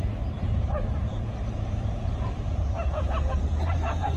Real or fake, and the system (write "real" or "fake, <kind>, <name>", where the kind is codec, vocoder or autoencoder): fake, vocoder, BigVGAN v2